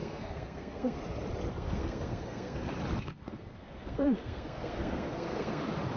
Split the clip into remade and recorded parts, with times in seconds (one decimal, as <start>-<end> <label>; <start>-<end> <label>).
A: 0.0-1.0 remade; 1.0-1.5 recorded; 1.5-2.6 remade; 2.6-3.1 recorded; 3.1-5.6 remade; 5.6-6.0 recorded